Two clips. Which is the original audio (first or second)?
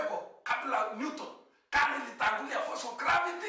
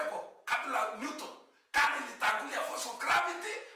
first